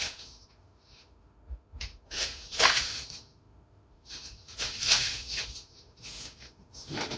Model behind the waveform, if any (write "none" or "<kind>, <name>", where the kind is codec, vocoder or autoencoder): autoencoder, DAC-VAE